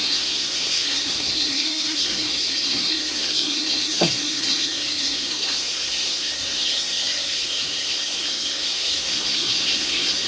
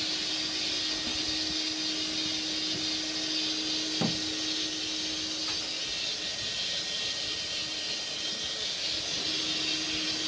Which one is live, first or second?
second